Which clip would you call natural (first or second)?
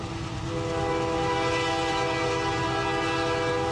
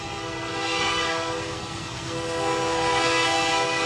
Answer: first